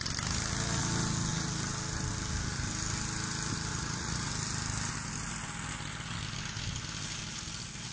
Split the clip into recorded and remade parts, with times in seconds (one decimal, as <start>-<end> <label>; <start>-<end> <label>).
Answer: 0.0-3.7 recorded; 3.7-4.3 remade; 4.3-7.9 recorded